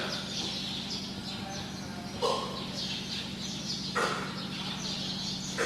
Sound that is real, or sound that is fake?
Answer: real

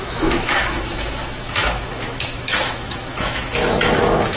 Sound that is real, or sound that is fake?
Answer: fake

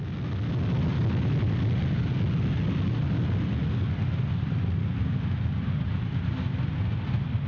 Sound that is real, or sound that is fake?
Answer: real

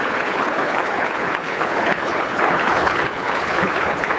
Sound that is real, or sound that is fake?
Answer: fake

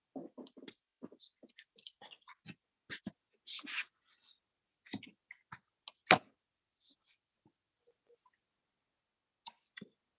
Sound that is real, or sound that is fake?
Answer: real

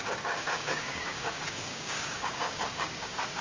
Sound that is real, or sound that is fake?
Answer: fake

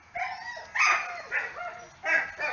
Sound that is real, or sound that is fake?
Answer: real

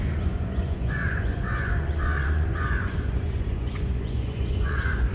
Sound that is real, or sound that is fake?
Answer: fake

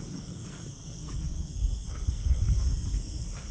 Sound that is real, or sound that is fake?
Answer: fake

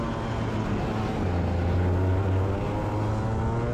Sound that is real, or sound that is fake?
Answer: real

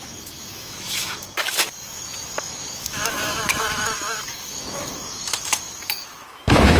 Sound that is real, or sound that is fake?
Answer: fake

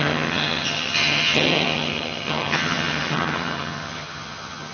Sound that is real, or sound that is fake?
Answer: fake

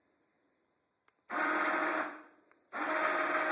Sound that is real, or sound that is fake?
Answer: real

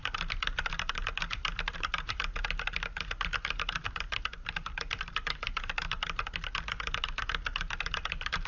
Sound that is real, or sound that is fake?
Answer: real